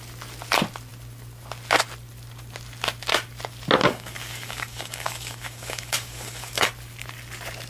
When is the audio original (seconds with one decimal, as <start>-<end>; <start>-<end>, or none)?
0.0-3.8; 6.7-7.7